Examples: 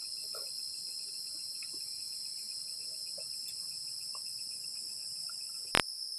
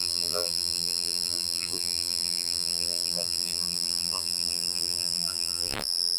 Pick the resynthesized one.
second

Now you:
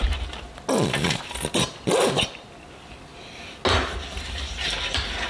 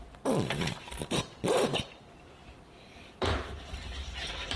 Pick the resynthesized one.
second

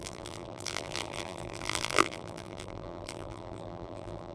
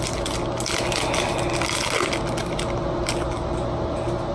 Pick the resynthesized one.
first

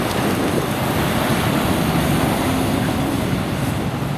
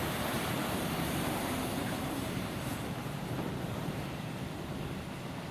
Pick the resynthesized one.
second